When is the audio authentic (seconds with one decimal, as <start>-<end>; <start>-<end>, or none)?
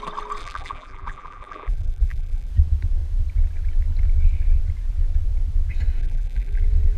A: 0.0-0.4; 2.5-6.0; 6.6-7.0